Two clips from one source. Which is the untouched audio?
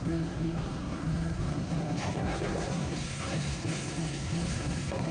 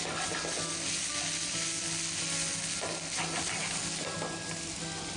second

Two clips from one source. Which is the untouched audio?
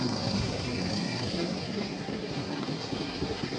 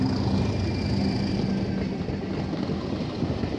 second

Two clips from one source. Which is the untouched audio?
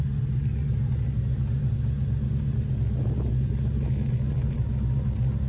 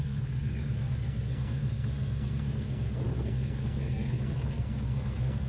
first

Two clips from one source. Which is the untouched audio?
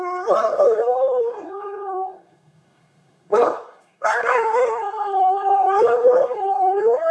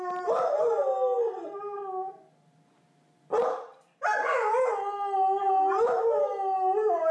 second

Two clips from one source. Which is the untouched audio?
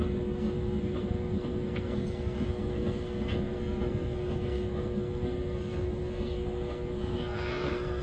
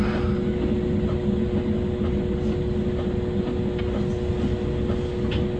second